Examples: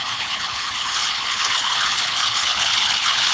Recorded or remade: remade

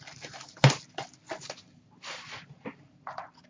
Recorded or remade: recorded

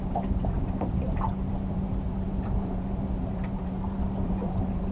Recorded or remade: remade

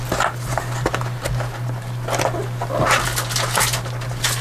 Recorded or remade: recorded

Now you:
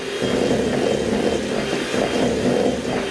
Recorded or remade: recorded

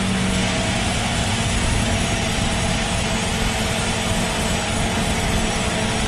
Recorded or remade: recorded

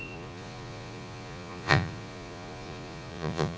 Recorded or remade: remade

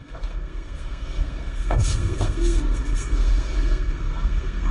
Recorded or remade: remade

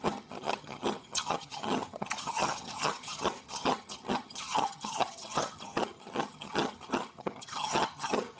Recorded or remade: remade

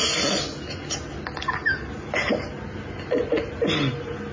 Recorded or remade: recorded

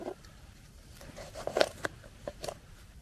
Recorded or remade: remade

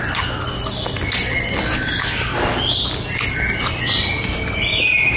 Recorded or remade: recorded